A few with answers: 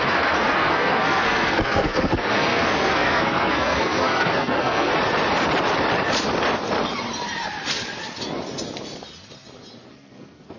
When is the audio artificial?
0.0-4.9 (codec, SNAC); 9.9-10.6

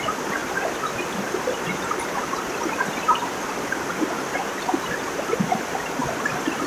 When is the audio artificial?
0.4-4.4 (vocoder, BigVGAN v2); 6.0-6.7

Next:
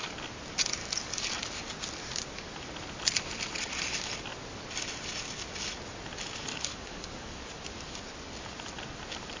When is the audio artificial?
0.8-1.3 (codec, DAC); 6.5-7.6